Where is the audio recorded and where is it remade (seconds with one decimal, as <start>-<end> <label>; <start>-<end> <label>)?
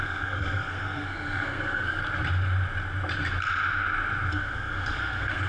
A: 0.0-2.0 remade; 2.0-4.3 recorded; 4.3-5.5 remade